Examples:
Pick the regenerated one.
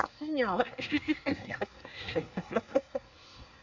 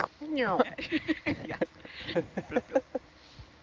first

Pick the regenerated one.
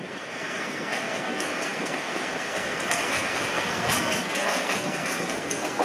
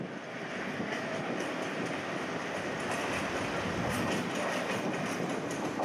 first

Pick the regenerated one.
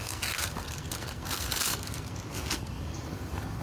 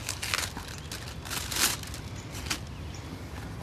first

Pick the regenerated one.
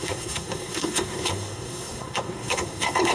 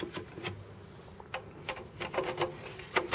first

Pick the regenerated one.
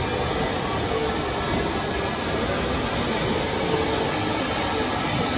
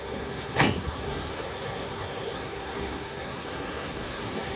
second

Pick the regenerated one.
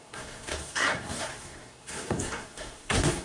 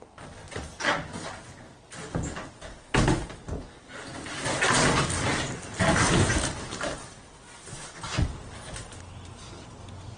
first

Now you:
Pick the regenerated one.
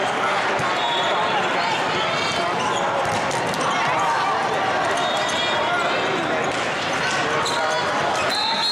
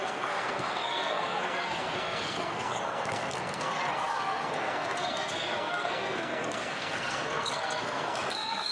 second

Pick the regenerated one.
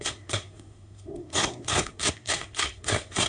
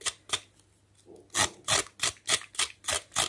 first